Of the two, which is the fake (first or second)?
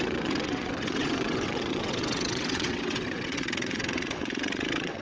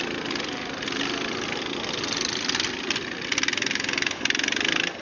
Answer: first